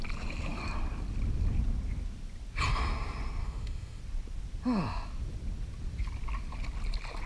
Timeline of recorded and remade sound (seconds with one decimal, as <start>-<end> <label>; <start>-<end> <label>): 0.0-3.4 recorded; 3.4-4.0 remade; 4.0-7.3 recorded